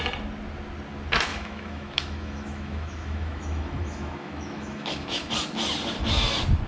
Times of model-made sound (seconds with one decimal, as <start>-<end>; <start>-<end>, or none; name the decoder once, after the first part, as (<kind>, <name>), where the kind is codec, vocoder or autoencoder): 1.3-5.3 (autoencoder, DAC-VAE)